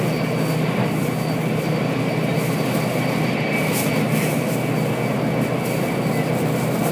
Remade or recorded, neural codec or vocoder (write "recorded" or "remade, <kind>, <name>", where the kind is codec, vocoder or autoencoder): recorded